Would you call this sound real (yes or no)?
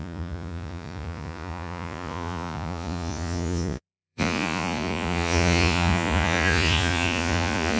no